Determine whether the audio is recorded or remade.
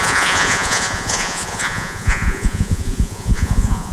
remade